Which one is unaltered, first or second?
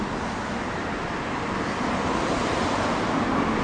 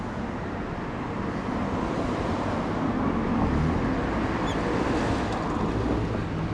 second